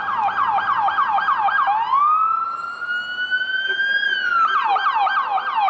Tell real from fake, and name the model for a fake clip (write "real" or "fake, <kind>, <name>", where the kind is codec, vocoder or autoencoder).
real